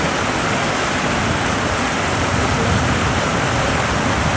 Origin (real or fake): real